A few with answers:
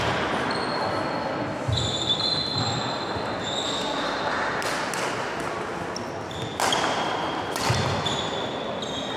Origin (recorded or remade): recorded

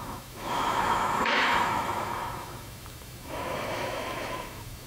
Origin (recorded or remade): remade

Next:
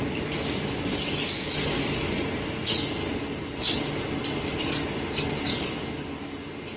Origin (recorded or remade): recorded